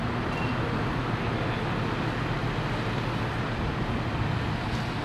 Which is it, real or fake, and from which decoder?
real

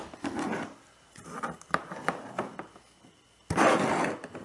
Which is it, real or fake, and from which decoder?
real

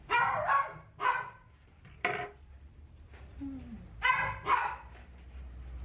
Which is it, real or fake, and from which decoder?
real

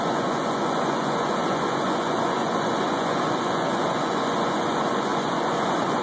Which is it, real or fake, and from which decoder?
fake, vocoder, Vocos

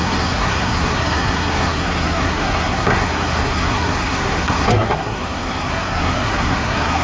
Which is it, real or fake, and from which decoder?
fake, codec, SNAC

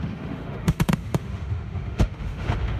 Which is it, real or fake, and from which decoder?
fake, autoencoder, DAC-VAE